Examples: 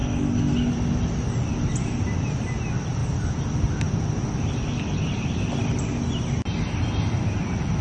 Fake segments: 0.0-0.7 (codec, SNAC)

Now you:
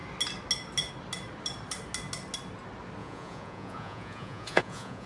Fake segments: 3.0-5.1 (vocoder, Vocos)

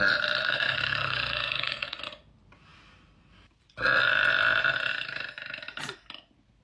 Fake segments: 0.4-2.0 (codec, SNAC)